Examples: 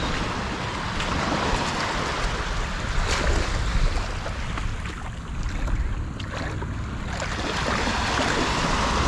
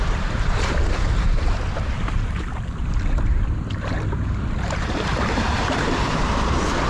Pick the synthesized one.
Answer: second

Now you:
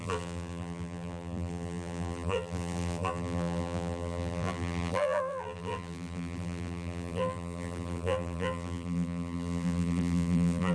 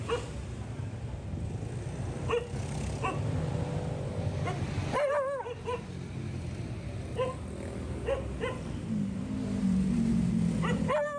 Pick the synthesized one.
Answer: first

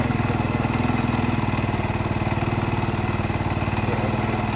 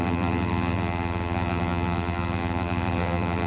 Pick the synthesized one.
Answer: second